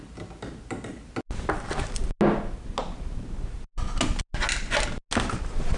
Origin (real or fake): real